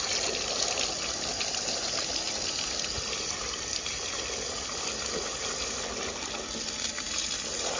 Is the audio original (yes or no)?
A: yes